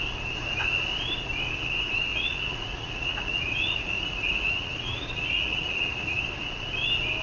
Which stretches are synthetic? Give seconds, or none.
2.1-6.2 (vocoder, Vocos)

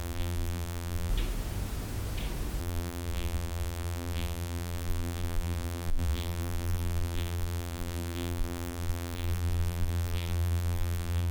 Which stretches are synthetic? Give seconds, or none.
0.0-1.1 (vocoder, BigVGAN v2); 2.6-11.3

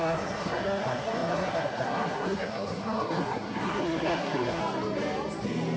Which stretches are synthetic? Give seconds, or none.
0.0-4.6 (codec, SNAC)

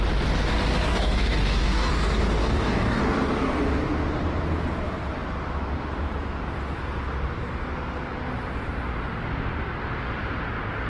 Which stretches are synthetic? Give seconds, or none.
0.9-1.9 (codec, DAC); 2.4-3.0

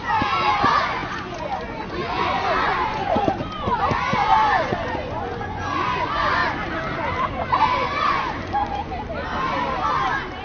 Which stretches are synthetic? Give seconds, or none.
0.0-6.4 (vocoder, Vocos); 7.6-8.8

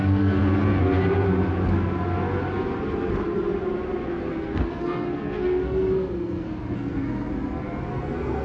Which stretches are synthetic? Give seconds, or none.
0.0-0.4 (codec, SNAC); 4.3-7.3; 7.9-8.4

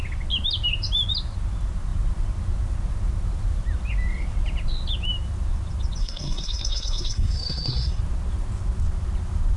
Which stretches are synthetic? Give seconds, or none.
6.0-8.0 (codec, SNAC)